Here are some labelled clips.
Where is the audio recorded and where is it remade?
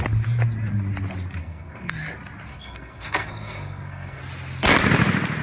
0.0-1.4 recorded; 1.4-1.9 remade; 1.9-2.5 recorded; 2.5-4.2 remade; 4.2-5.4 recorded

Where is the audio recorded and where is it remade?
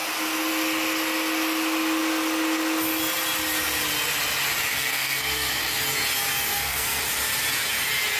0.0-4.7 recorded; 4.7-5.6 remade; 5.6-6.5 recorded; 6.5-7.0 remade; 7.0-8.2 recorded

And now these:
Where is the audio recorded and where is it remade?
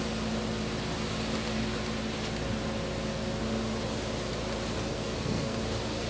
0.0-4.9 recorded; 4.9-5.6 remade; 5.6-6.1 recorded